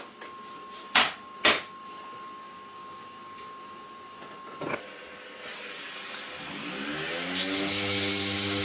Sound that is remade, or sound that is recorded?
recorded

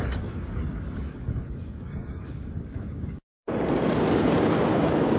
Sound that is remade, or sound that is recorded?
remade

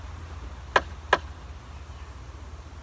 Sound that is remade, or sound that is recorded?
recorded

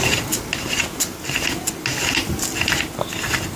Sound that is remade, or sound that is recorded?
recorded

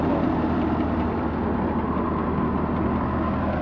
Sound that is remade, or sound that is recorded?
recorded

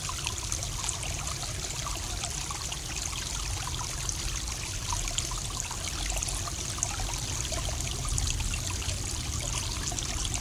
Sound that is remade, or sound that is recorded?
recorded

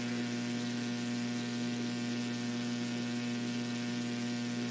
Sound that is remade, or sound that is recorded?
remade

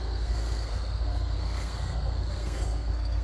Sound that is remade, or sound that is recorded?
remade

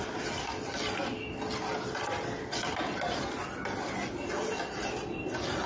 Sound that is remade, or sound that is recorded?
recorded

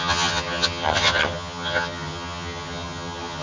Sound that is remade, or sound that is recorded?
remade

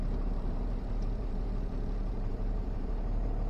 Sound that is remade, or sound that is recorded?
remade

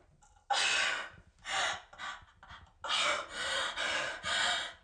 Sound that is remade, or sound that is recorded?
recorded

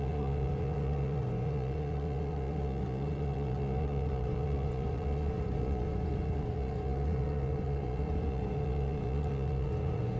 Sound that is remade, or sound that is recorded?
remade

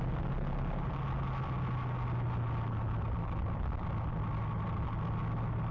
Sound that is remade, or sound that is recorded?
recorded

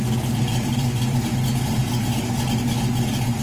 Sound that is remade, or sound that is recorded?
recorded